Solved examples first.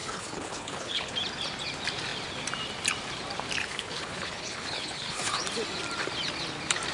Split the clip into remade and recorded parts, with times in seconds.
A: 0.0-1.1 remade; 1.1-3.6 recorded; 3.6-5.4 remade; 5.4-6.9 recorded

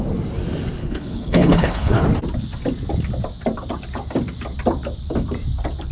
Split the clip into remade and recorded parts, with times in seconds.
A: 0.0-0.8 recorded; 0.8-2.0 remade; 2.0-5.9 recorded

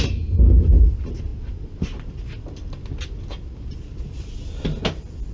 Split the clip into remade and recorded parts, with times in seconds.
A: 0.0-5.3 recorded

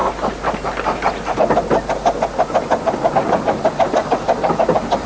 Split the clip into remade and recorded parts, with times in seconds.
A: 0.0-5.1 recorded

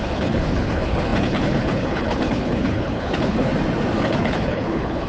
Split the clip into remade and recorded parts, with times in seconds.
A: 0.0-3.5 remade; 3.5-4.0 recorded; 4.0-5.1 remade

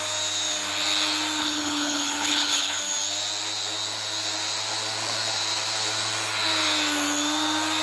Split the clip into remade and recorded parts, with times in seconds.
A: 0.0-1.4 recorded; 1.4-2.8 remade; 2.8-7.8 recorded

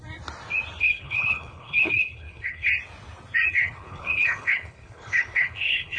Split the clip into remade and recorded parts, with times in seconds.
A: 0.0-0.8 recorded; 0.8-2.7 remade; 2.7-3.5 recorded; 3.5-6.0 remade

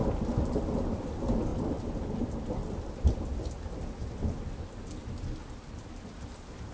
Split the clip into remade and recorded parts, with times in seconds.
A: 0.0-6.7 recorded